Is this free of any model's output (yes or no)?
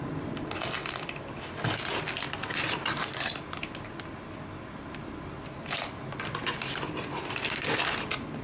yes